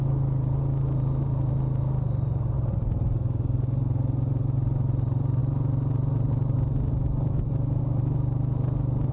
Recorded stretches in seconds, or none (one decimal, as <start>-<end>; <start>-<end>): 0.0-9.1